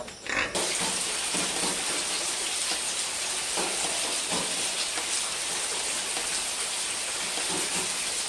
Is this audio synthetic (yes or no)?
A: no